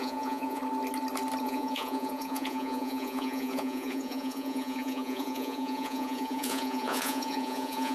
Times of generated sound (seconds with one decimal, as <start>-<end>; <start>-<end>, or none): 0.0-0.6; 1.4-7.9